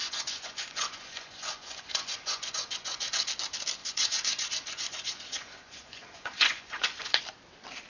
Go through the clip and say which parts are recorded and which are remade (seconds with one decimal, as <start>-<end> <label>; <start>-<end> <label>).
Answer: 0.0-3.3 remade; 3.3-3.8 recorded; 3.8-7.2 remade; 7.2-7.9 recorded